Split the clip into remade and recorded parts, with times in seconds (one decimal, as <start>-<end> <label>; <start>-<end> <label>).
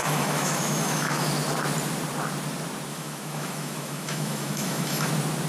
0.0-1.3 remade; 1.3-2.9 recorded; 2.9-5.1 remade; 5.1-5.5 recorded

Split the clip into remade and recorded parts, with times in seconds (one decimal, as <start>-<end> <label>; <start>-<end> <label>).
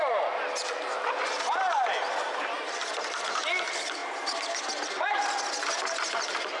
0.0-6.6 recorded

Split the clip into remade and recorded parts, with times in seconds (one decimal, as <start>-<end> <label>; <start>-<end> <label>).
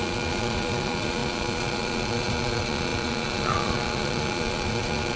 0.0-5.2 remade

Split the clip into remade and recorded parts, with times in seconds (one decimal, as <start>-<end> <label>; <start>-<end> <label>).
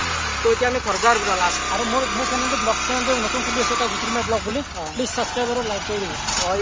0.0-6.6 recorded